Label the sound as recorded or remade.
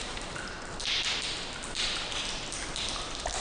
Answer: recorded